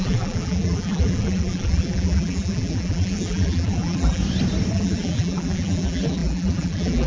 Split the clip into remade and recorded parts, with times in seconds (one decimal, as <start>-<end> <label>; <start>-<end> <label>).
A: 0.0-4.2 remade; 4.2-4.7 recorded; 4.7-7.1 remade